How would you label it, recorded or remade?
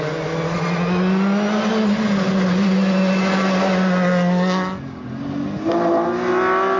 recorded